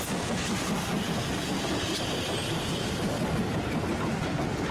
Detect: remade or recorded recorded